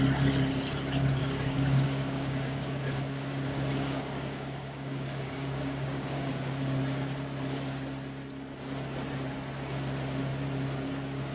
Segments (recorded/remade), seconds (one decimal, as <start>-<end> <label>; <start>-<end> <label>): 0.0-1.2 recorded; 1.2-6.3 remade; 6.3-11.3 recorded